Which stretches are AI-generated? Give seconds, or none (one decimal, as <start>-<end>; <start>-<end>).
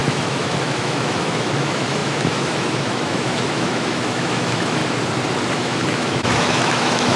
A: 0.0-4.8; 5.5-7.2